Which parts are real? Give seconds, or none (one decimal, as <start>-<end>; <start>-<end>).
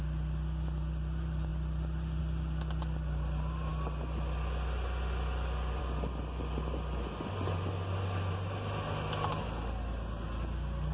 0.0-10.9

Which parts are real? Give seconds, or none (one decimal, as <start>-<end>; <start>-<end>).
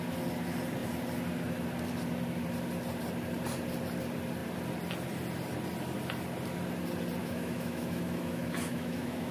0.0-7.2